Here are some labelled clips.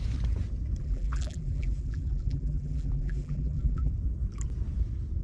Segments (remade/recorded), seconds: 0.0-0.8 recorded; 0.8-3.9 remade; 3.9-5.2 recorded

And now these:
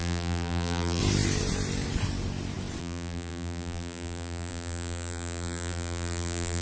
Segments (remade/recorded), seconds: 0.0-1.0 remade; 1.0-2.8 recorded; 2.8-6.6 remade